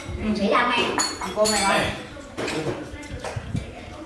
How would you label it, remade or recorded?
remade